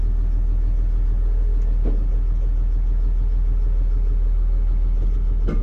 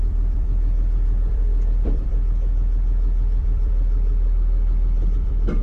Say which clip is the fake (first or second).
second